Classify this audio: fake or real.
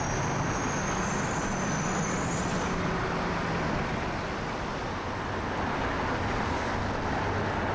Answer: real